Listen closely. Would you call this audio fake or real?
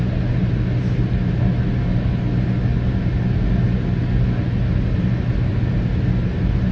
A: real